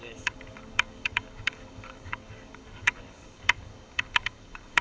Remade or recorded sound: remade